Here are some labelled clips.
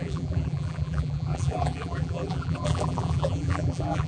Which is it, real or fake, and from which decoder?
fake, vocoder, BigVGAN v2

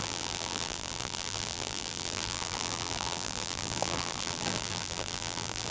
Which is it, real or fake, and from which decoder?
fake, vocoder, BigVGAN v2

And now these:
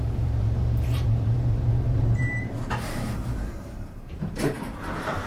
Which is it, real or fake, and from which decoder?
fake, vocoder, BigVGAN v2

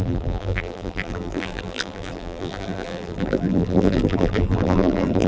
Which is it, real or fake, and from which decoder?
fake, vocoder, BigVGAN v2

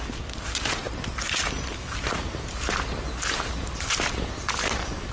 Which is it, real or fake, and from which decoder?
real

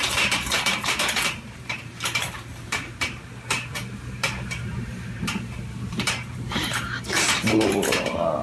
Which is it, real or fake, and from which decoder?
fake, vocoder, BigVGAN v2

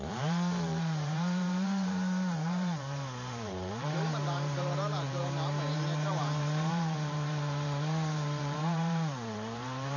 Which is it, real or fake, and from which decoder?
fake, vocoder, BigVGAN v2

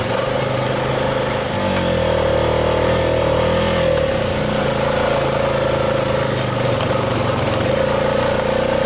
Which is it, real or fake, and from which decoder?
real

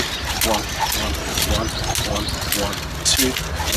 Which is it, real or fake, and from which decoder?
real